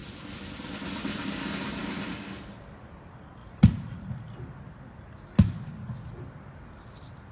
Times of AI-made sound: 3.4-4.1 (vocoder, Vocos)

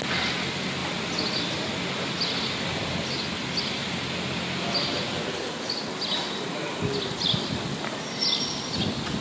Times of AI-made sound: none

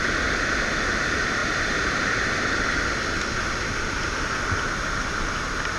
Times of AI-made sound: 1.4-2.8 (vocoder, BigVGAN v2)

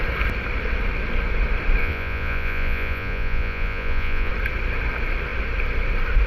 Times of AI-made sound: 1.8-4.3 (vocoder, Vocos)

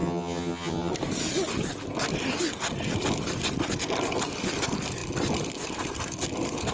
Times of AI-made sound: 0.0-0.9 (vocoder, HiFi-GAN)